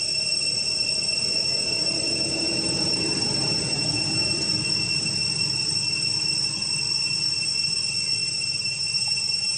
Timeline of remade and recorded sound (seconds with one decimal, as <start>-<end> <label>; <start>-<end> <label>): 0.0-1.5 recorded; 1.5-4.5 remade; 4.5-8.2 recorded; 8.2-9.6 remade